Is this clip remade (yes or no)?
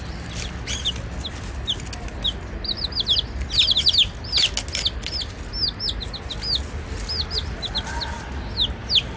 no